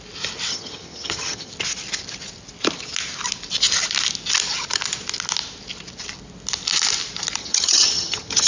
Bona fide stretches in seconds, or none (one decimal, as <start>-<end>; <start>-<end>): 0.0-0.5; 1.5-7.4